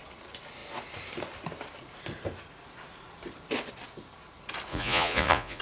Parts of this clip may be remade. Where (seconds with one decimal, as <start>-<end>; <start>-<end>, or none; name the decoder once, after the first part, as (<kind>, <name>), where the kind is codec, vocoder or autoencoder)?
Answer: 4.7-5.6 (vocoder, Vocos)